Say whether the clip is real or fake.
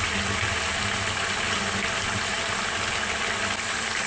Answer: real